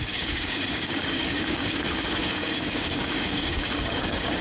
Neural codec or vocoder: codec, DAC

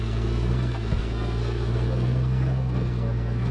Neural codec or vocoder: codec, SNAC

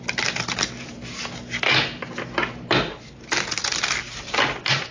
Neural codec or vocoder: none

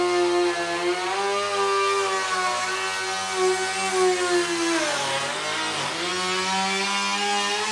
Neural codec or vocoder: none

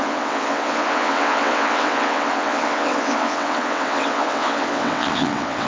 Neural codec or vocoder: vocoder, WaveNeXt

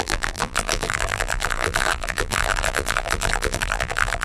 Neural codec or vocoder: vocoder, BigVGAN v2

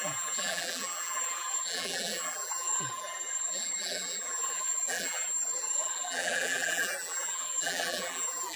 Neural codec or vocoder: vocoder, BigVGAN v2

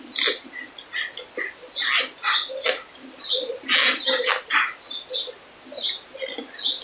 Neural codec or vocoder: none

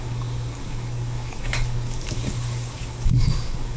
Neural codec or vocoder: codec, DAC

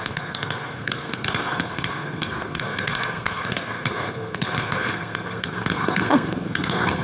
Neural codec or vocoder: codec, SNAC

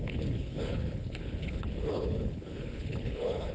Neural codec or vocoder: codec, HILCodec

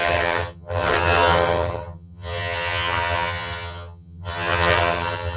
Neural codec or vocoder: vocoder, HiFi-GAN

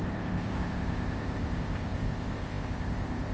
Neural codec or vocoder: codec, ZipCodec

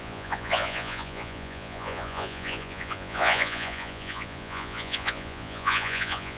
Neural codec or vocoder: vocoder, Vocos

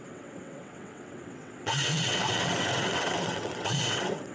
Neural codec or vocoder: vocoder, WaveNeXt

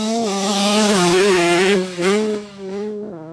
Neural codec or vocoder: autoencoder, DAC-VAE